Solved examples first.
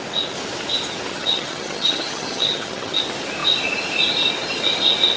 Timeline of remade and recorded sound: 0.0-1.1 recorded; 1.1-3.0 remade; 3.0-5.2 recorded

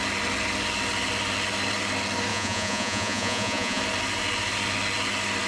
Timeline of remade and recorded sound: 0.0-2.3 recorded; 2.3-3.8 remade; 3.8-5.5 recorded

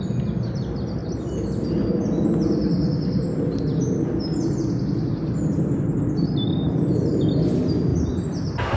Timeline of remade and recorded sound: 0.0-8.8 recorded